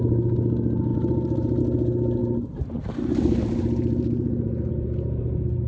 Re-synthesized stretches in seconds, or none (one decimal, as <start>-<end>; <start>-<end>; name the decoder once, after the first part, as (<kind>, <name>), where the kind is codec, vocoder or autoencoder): 0.9-1.6 (vocoder, BigVGAN v2); 2.2-4.7